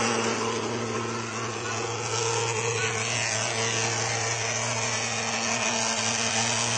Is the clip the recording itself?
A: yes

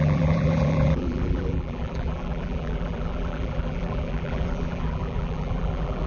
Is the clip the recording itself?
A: no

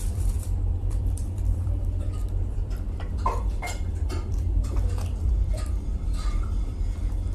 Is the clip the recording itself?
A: no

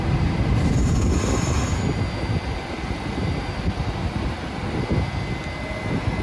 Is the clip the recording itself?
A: yes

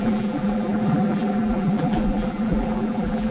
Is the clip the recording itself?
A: no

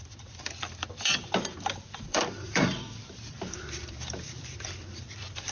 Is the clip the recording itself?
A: no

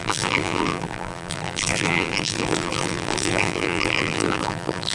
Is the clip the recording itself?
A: no